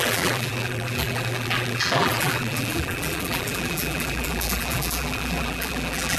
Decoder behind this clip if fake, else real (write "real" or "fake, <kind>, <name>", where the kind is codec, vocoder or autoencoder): fake, vocoder, BigVGAN v2